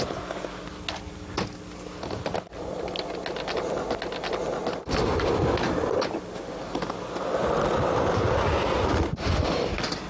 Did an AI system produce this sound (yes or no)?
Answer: no